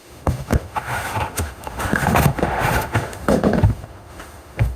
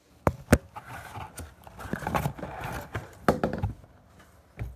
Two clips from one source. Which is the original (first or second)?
second